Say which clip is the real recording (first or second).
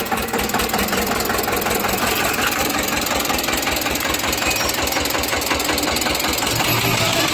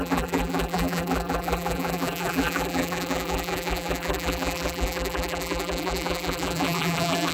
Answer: first